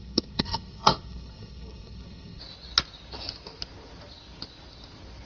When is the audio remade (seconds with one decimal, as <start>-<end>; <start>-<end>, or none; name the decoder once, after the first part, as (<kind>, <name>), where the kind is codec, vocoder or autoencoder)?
0.0-2.4 (codec, SNAC)